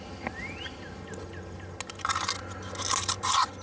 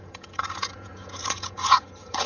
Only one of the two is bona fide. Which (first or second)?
first